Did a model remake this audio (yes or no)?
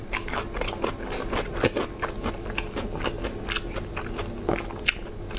no